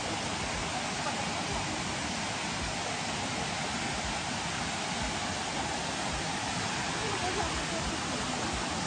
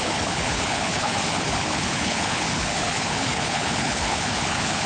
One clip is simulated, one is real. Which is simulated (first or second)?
second